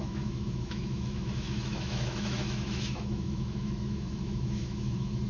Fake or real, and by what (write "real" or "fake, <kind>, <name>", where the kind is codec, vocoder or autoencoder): fake, autoencoder, DAC-VAE